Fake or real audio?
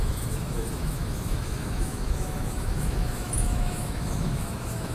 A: fake